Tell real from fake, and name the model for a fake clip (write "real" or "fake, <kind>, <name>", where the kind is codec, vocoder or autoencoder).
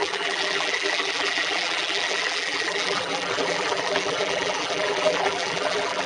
fake, vocoder, BigVGAN v2